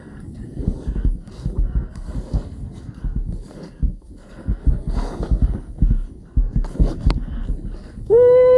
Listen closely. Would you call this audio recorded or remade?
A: remade